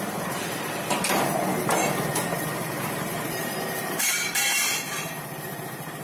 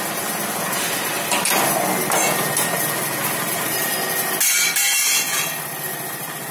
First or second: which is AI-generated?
first